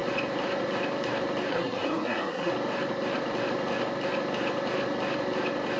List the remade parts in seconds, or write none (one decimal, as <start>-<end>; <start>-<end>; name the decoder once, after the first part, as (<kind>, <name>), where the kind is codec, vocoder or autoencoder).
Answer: 1.5-2.5 (codec, SNAC)